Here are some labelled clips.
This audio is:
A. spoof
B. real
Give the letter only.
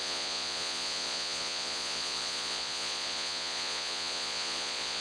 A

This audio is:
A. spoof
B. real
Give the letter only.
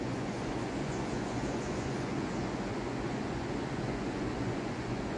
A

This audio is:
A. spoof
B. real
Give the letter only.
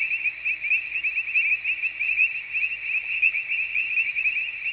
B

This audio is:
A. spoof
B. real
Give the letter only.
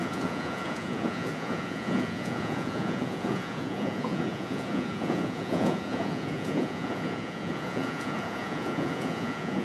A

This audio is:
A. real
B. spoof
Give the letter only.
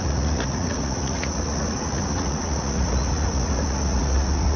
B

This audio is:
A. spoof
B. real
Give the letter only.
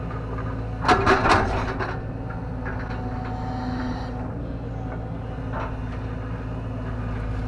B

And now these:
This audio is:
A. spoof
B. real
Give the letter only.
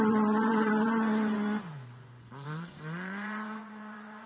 A